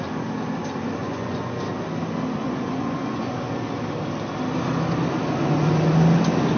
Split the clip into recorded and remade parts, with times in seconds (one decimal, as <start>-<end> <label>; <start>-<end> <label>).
0.0-1.0 recorded; 1.0-1.6 remade; 1.6-2.4 recorded; 2.4-3.3 remade; 3.3-6.6 recorded